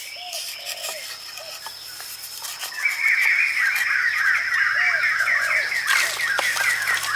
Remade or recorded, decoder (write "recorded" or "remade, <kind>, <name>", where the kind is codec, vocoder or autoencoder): recorded